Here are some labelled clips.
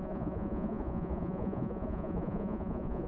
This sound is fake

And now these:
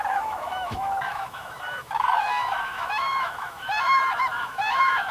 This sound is fake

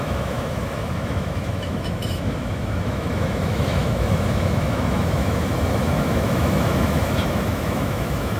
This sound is fake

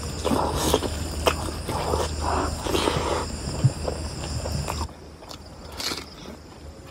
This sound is real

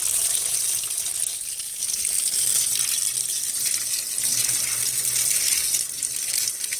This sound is real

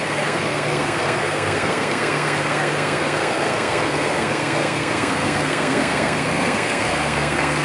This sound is fake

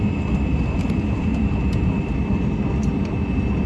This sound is fake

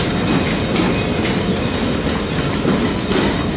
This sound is real